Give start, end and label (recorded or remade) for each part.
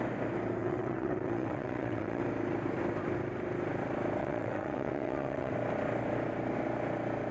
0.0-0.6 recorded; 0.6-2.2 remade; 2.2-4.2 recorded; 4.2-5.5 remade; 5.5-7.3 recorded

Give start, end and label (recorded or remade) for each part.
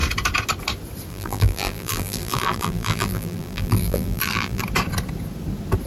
0.0-1.1 recorded; 1.1-4.6 remade; 4.6-5.9 recorded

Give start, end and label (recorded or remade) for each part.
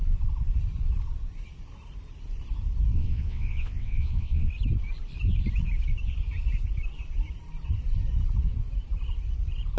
0.0-2.9 recorded; 2.9-4.5 remade; 4.5-9.8 recorded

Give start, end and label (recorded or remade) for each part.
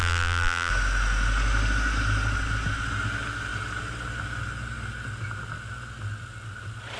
0.0-0.7 remade; 0.7-7.0 recorded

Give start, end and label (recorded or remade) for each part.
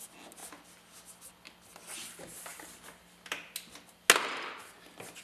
0.0-5.2 recorded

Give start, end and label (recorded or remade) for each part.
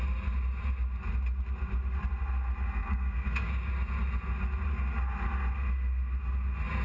0.0-2.8 recorded; 2.8-3.7 remade; 3.7-6.8 recorded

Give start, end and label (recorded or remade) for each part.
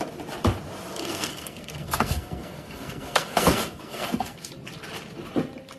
0.0-1.0 recorded; 1.0-4.5 remade; 4.5-5.8 recorded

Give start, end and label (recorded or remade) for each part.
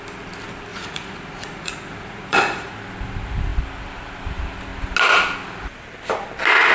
0.0-0.7 recorded; 0.7-2.8 remade; 2.8-6.7 recorded